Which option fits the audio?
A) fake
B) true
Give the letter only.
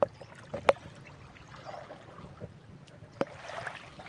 B